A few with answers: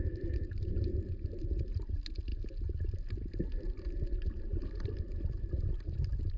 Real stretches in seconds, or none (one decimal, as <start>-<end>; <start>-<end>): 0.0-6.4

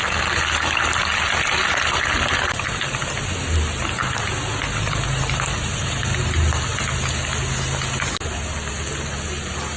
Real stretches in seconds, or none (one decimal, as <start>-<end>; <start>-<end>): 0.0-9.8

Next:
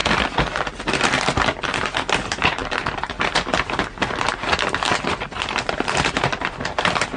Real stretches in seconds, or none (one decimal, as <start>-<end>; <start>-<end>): 0.0-2.6

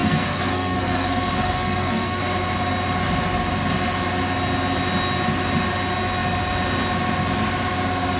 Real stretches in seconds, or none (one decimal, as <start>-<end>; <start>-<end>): 2.2-8.2

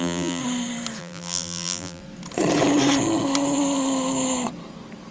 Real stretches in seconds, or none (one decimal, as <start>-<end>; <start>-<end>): 0.4-1.0; 2.0-5.1

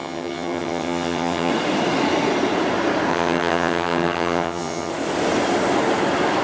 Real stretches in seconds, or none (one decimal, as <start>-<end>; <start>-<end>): 1.5-3.1; 4.9-6.4

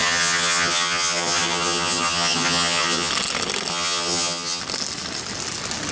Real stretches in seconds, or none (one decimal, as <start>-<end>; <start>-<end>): 3.1-3.7; 4.6-5.9

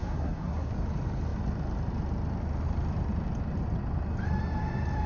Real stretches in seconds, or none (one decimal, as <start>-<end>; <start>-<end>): 0.7-5.1